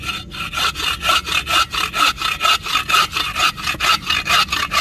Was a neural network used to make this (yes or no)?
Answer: no